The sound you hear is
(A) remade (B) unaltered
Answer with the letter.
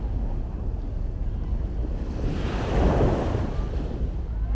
B